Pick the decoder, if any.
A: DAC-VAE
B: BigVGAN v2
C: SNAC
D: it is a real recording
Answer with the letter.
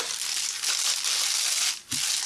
D